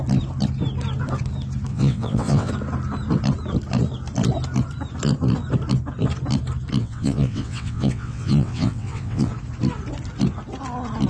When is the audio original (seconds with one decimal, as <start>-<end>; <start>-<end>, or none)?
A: 0.0-1.7; 2.5-6.8; 9.3-11.1